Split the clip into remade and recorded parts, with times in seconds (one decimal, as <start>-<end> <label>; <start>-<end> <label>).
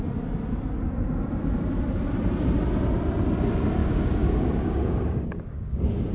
0.0-3.8 recorded; 3.8-6.1 remade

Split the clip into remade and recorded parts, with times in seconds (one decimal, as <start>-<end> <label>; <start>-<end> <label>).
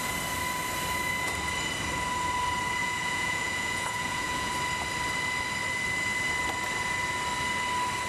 0.0-2.8 recorded; 2.8-4.5 remade; 4.5-8.1 recorded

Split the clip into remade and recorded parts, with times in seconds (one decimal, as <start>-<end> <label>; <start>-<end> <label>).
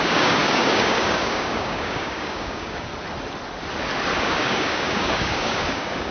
0.0-2.9 remade; 2.9-4.2 recorded; 4.2-6.1 remade